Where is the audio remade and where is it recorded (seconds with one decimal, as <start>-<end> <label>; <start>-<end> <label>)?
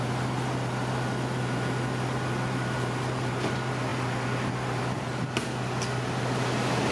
0.0-6.9 recorded